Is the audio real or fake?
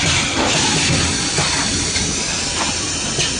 real